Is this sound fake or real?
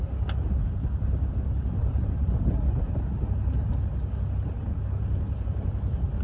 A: real